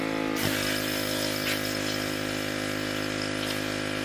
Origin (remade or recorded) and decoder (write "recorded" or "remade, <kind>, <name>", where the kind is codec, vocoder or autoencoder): recorded